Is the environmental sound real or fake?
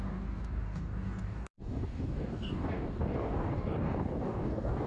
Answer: fake